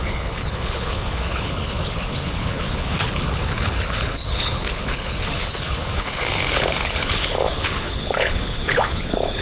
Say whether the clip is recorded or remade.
remade